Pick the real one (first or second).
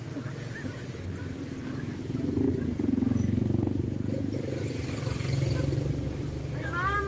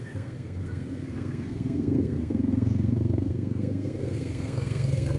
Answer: first